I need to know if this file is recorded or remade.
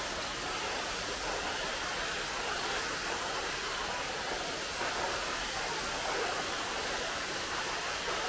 recorded